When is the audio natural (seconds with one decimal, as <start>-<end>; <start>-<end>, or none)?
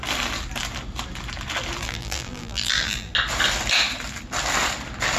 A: 0.0-1.8; 3.1-5.2